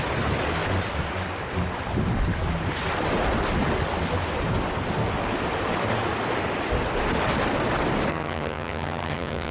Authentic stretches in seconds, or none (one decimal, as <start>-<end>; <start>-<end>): 0.0-8.1